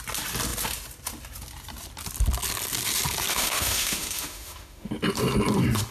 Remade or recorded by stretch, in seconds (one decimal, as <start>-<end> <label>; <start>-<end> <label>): 0.0-3.3 recorded; 3.3-4.9 remade; 4.9-5.9 recorded